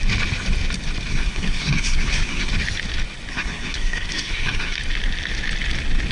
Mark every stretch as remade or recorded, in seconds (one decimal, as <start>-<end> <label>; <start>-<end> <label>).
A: 0.0-1.1 recorded; 1.1-2.5 remade; 2.5-3.3 recorded; 3.3-4.8 remade; 4.8-6.1 recorded